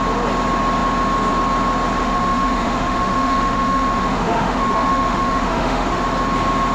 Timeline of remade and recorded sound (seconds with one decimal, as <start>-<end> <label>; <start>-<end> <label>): 0.0-2.0 recorded; 2.0-6.0 remade; 6.0-6.7 recorded